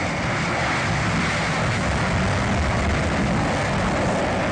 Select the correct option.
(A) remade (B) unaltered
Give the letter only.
B